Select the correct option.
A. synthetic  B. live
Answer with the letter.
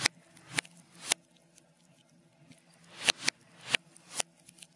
B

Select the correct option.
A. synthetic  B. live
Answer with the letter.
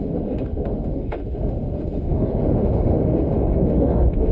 A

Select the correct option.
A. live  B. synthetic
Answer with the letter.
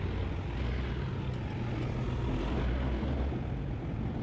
A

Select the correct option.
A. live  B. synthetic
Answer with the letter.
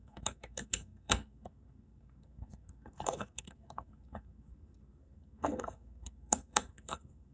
B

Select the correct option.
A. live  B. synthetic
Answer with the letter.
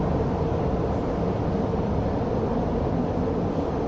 A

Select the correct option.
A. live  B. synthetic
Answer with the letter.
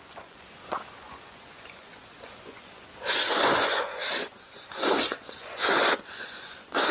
B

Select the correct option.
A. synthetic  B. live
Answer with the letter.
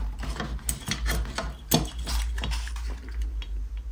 B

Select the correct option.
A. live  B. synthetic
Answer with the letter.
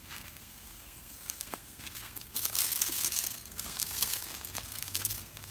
B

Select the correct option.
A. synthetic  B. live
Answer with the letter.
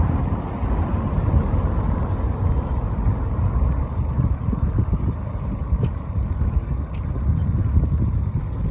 B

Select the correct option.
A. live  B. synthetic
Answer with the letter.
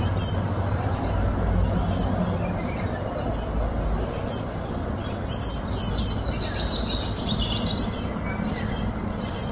A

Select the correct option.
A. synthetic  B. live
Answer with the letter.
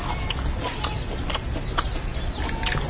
B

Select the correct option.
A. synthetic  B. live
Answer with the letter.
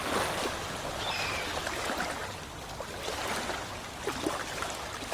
B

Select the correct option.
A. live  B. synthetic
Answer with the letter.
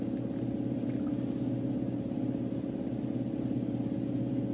A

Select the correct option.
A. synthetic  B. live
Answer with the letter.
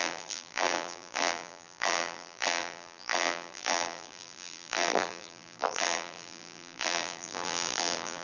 A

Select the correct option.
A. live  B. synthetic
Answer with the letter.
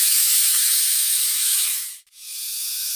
B